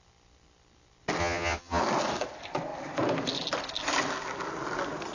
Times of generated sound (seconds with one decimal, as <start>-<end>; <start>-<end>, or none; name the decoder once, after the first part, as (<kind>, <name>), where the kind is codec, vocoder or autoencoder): 1.2-1.8 (vocoder, HiFi-GAN)